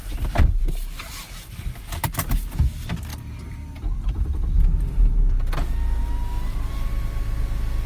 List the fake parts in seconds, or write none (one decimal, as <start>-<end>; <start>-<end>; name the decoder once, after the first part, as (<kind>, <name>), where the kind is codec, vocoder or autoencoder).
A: none